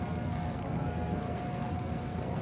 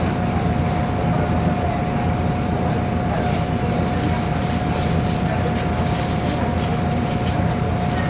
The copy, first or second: first